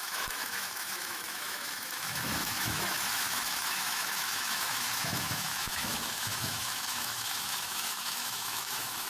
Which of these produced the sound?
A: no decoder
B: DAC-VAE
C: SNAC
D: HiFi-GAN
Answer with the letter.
B